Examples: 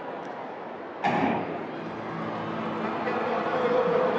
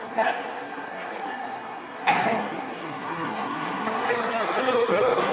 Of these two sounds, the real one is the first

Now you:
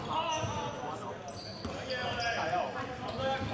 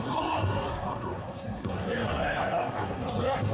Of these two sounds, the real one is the first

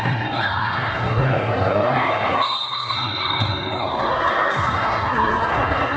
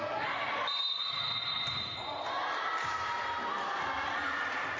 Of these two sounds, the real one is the second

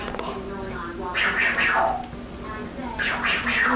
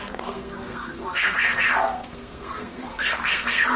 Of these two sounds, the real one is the first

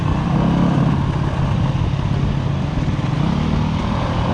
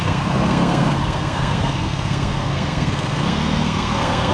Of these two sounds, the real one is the first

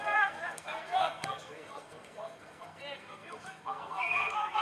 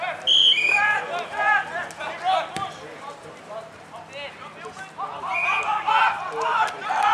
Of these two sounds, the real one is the second